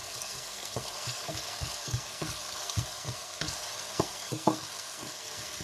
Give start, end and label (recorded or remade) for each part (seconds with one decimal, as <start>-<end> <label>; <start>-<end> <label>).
0.0-5.6 remade